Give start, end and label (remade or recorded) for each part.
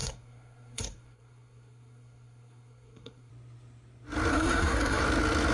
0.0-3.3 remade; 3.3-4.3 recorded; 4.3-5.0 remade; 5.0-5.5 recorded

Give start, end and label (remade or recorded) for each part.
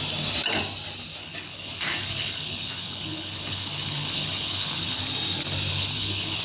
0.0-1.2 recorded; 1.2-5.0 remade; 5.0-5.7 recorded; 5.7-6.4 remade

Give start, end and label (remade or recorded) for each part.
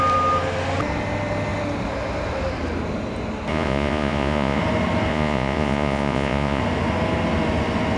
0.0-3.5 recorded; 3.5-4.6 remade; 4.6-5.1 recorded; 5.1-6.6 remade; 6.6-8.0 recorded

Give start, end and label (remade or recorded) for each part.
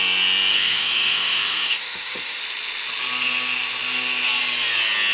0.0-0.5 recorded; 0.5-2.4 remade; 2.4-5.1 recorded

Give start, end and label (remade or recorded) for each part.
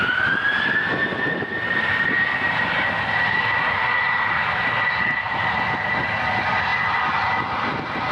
0.0-1.1 recorded; 1.1-2.6 remade; 2.6-8.1 recorded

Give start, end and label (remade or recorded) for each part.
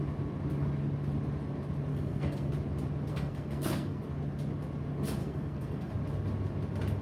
0.0-1.9 recorded; 1.9-2.5 remade; 2.5-3.1 recorded; 3.1-4.0 remade; 4.0-5.2 recorded; 5.2-5.9 remade; 5.9-7.0 recorded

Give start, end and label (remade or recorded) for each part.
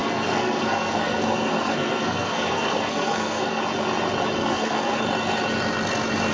0.0-3.6 remade; 3.6-4.4 recorded; 4.4-5.0 remade; 5.0-6.3 recorded